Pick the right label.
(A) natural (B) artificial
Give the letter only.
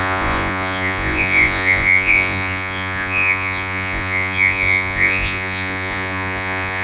B